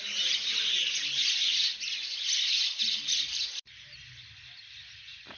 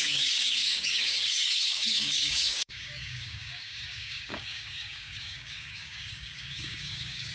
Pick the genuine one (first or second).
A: first